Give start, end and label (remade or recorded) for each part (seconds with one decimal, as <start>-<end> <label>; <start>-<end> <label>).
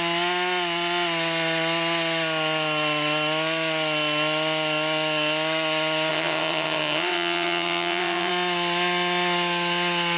0.0-6.1 recorded; 6.1-8.3 remade; 8.3-10.2 recorded